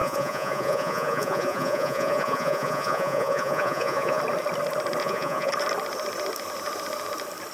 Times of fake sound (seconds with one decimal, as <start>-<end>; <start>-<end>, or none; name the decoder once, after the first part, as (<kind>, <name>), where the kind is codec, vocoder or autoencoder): 0.0-4.2 (vocoder, Vocos); 5.0-5.5